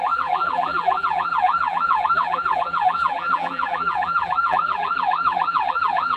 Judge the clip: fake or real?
fake